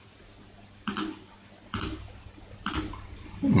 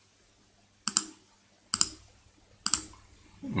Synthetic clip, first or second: first